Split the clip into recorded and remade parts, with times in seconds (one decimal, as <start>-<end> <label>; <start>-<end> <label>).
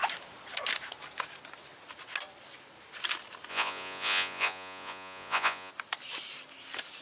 0.0-3.5 recorded; 3.5-5.7 remade; 5.7-7.0 recorded